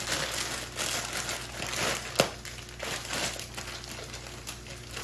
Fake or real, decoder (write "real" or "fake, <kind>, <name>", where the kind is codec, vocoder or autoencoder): real